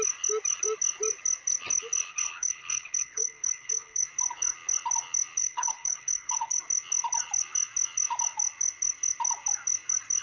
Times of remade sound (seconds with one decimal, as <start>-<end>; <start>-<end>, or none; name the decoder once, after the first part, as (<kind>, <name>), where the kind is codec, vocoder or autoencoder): 2.1-4.0 (codec, HILCodec); 5.4-6.6